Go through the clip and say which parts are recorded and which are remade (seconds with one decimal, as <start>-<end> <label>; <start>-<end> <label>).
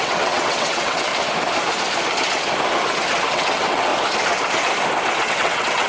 0.0-1.1 remade; 1.1-3.3 recorded; 3.3-3.9 remade; 3.9-5.3 recorded; 5.3-5.9 remade